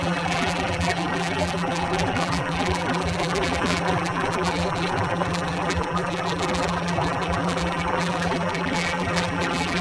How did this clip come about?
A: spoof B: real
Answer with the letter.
A